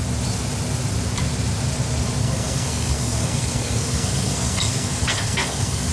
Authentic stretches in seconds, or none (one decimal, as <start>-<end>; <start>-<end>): 0.0-2.2